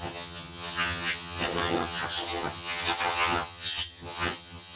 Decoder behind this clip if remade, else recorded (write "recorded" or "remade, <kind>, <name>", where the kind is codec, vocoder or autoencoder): remade, vocoder, HiFi-GAN